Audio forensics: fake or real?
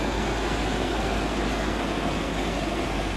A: fake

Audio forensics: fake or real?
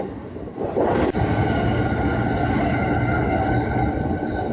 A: real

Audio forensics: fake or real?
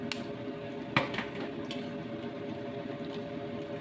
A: real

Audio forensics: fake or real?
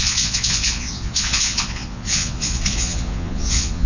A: fake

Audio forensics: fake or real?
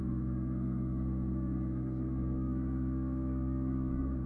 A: fake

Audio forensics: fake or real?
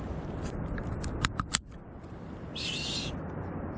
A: fake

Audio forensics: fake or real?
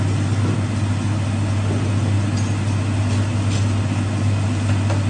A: real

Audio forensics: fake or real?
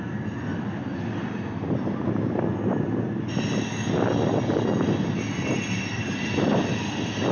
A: real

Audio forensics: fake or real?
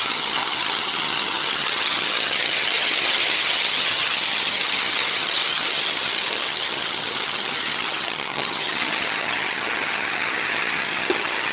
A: fake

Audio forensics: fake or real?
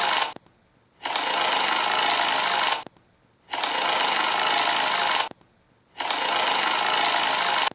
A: real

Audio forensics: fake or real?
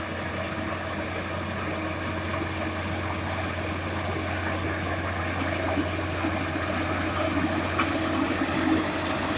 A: real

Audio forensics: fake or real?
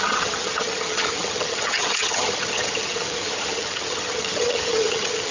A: fake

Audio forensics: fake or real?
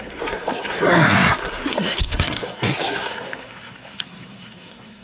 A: fake